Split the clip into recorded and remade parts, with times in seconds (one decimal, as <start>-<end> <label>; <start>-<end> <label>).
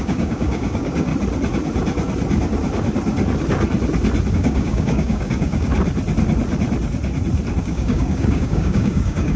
0.0-1.1 remade; 1.1-4.3 recorded; 4.3-5.7 remade; 5.7-7.6 recorded; 7.6-9.4 remade